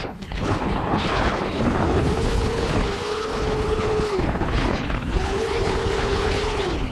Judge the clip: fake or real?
fake